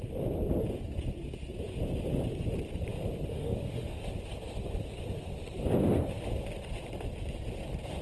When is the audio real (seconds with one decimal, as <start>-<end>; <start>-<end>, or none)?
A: 0.0-3.3; 4.0-8.0